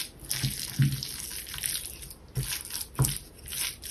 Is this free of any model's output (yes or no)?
yes